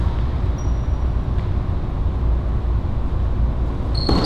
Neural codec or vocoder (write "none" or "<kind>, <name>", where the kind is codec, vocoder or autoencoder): none